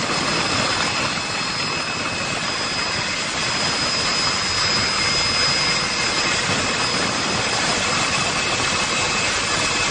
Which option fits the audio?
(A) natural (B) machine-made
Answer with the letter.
A